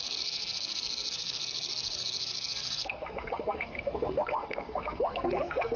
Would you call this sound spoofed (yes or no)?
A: yes